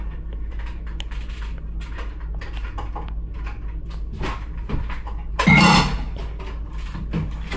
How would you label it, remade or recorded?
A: recorded